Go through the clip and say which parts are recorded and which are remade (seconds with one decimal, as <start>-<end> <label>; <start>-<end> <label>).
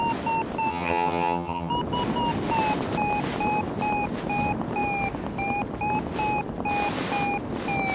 0.0-0.7 recorded; 0.7-1.7 remade; 1.7-7.9 recorded